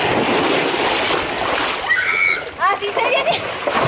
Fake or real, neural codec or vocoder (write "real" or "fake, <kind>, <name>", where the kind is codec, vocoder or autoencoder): real